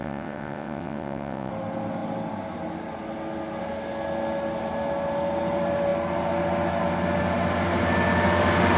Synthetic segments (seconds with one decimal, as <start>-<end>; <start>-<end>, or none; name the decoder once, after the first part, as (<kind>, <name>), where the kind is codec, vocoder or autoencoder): 0.0-1.5 (vocoder, WaveNeXt)